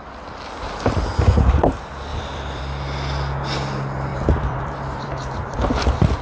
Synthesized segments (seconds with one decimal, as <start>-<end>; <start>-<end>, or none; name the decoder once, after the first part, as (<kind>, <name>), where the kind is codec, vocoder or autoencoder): 2.1-2.6 (vocoder, BigVGAN v2); 4.1-6.2